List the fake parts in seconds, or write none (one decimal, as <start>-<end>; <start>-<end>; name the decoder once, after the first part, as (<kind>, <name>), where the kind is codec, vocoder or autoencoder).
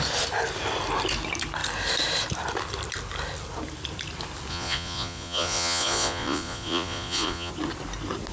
4.5-7.5 (vocoder, Vocos)